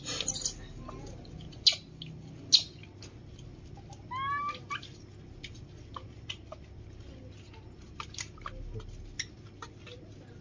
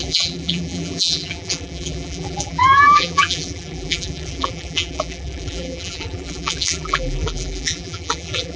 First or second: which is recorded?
first